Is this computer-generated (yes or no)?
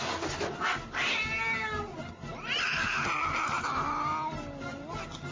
no